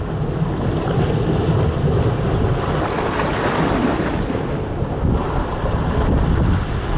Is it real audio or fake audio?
real